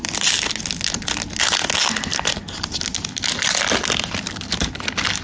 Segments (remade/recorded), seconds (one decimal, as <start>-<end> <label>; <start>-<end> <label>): 0.0-5.2 recorded